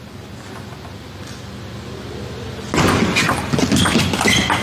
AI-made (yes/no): no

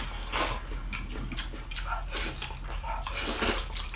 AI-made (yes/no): no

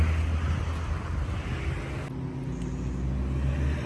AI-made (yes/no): no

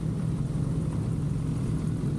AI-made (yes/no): no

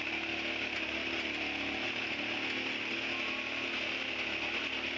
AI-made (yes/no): no